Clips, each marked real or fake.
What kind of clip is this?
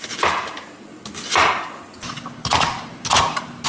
real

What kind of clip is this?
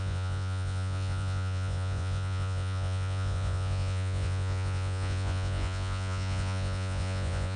fake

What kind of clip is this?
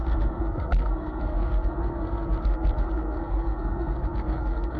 fake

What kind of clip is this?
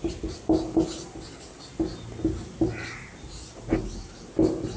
real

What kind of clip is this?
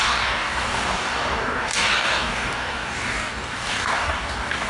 fake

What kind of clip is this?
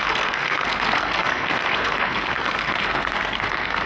fake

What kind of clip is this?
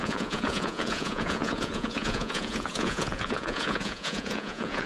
fake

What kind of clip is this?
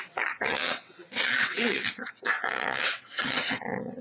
fake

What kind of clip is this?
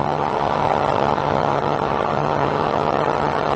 fake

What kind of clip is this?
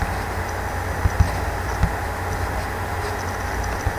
real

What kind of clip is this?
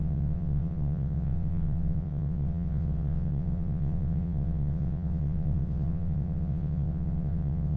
fake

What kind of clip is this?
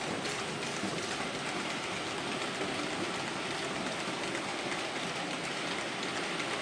real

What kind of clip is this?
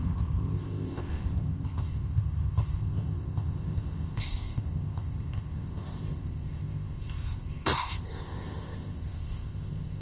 fake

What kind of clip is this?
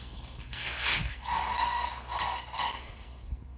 fake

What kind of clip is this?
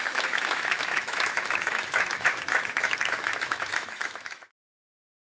fake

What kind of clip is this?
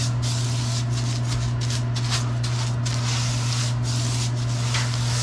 real